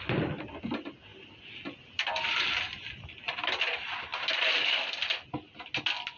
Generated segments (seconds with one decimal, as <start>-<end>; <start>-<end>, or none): none